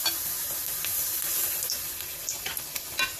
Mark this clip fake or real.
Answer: real